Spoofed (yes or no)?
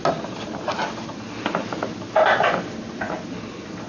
no